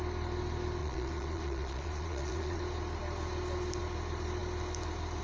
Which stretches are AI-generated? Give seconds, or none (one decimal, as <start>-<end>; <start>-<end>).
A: 0.8-2.6

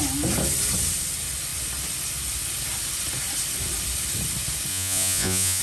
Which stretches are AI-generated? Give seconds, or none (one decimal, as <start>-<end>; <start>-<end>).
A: 4.7-5.6

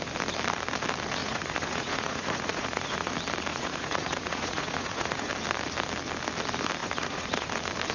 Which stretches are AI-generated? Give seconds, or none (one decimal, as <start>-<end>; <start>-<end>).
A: 1.2-3.1; 3.5-5.3; 6.8-7.5